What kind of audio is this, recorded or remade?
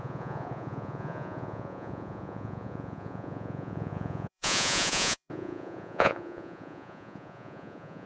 remade